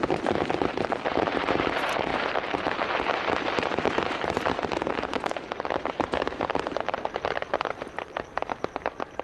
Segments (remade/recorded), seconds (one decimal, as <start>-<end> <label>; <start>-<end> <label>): 0.0-9.2 remade